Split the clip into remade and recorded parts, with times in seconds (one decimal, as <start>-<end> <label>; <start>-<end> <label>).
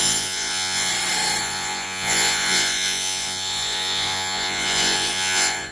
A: 0.0-0.9 remade; 0.9-1.4 recorded; 1.4-5.7 remade